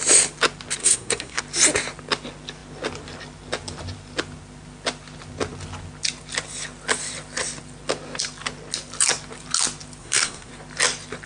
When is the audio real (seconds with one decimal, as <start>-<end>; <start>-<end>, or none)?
0.0-0.8; 1.4-10.0; 10.5-11.3